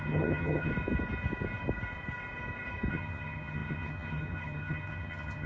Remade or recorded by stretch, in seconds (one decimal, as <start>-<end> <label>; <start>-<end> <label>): 0.0-0.7 remade; 0.7-2.9 recorded; 2.9-5.5 remade